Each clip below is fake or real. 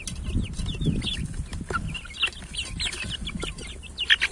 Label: real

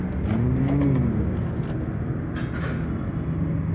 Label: real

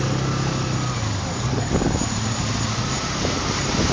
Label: real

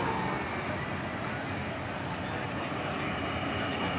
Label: real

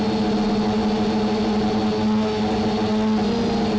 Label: real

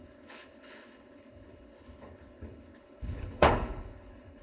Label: fake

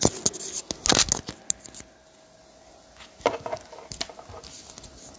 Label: real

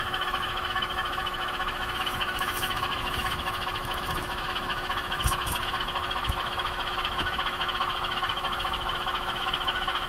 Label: fake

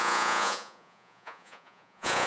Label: fake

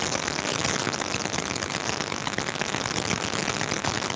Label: real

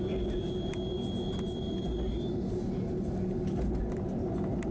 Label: real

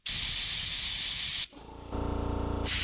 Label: real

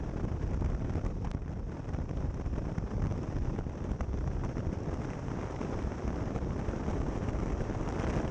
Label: fake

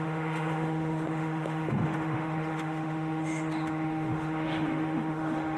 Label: fake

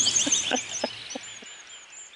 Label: real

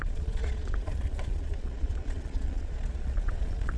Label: fake